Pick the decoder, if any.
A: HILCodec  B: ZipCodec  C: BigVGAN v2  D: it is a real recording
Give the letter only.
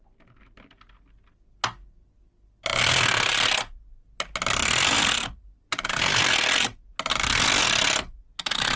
D